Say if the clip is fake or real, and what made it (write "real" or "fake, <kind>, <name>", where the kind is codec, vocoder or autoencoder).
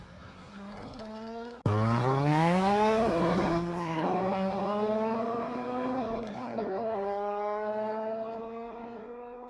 fake, codec, SNAC